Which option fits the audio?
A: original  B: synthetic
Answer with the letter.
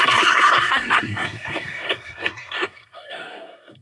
B